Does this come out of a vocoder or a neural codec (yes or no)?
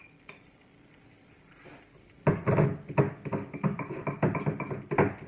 no